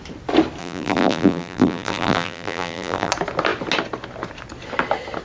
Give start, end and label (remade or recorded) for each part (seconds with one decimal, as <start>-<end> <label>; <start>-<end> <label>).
0.0-0.6 recorded; 0.6-3.1 remade; 3.1-5.2 recorded